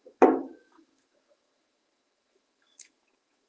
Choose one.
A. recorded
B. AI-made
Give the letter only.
B